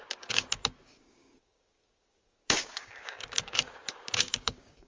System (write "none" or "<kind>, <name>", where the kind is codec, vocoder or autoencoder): codec, DAC